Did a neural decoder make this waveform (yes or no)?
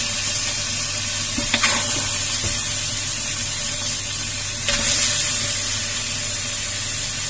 no